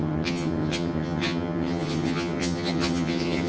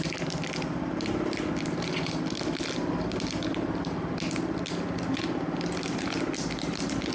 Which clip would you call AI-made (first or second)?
first